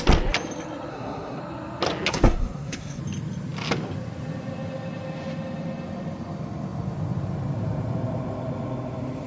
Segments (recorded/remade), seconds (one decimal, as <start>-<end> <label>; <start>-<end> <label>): 0.0-0.9 recorded; 0.9-1.4 remade; 1.4-2.1 recorded; 2.1-3.0 remade; 3.0-9.3 recorded